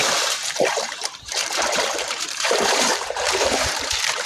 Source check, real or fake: fake